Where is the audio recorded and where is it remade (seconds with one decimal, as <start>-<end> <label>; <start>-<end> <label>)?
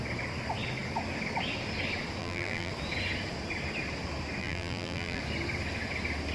0.0-2.2 recorded; 2.2-2.7 remade; 2.7-4.4 recorded; 4.4-5.2 remade; 5.2-6.3 recorded